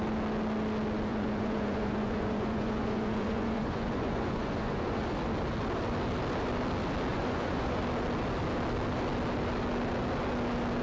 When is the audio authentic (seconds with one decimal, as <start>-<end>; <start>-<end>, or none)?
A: 0.0-1.1; 5.0-7.1; 7.8-10.8

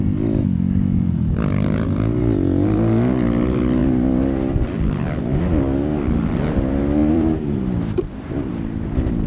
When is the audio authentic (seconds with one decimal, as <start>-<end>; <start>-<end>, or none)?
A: 0.0-7.0; 8.5-9.3